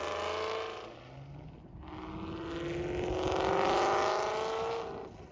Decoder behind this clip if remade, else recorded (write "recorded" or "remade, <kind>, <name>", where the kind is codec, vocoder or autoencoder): recorded